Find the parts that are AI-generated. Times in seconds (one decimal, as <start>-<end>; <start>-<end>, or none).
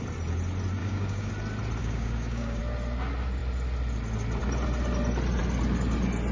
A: 0.8-1.3; 1.8-2.6